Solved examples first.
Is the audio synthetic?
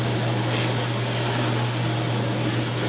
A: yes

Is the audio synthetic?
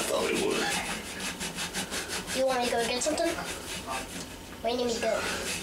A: no